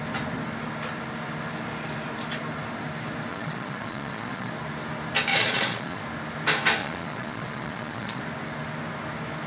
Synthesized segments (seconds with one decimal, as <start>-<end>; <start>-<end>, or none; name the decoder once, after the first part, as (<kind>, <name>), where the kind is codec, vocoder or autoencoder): 3.3-4.5 (vocoder, Vocos); 5.3-6.0; 6.8-8.2